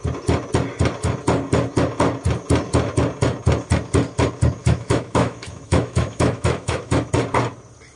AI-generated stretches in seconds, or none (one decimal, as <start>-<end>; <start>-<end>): 4.6-7.1

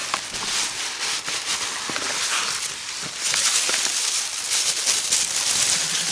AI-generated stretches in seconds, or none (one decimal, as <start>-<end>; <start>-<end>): none

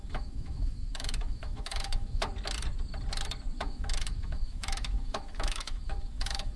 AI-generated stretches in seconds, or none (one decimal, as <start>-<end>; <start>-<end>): 0.0-2.3; 3.6-6.6